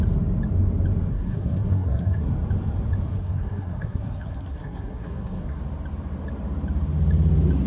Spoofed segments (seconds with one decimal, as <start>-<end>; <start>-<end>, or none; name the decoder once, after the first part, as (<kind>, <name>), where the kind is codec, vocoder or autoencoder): 1.1-2.3 (codec, SNAC); 3.1-5.6